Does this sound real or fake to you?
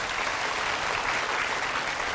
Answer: real